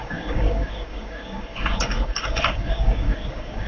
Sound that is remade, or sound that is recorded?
remade